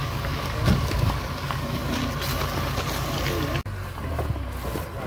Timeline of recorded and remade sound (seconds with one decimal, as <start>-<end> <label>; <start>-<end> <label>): 0.0-1.8 remade; 1.8-5.1 recorded